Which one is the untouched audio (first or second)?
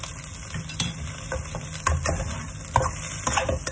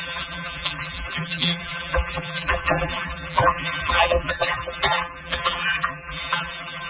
first